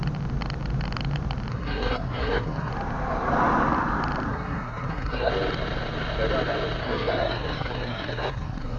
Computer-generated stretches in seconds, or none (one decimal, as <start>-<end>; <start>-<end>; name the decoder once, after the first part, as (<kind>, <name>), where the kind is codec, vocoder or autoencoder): 1.5-2.7 (codec, SNAC); 4.3-5.3; 6.8-8.8